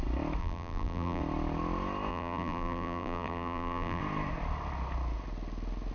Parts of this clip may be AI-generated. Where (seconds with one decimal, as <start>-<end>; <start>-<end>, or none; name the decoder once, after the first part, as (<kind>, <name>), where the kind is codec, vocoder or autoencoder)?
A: 0.4-1.2 (vocoder, BigVGAN v2); 2.1-4.0